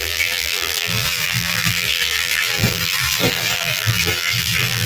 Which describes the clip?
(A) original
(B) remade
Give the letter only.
B